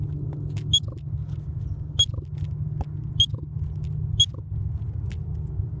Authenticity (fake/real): real